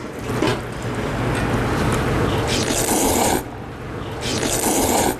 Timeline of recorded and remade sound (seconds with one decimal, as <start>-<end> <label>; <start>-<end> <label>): 0.0-5.2 recorded